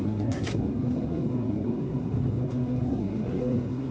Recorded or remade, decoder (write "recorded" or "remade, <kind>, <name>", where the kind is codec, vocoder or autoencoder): remade, codec, SNAC